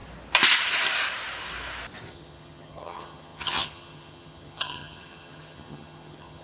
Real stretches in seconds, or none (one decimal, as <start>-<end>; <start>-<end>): 0.0-2.1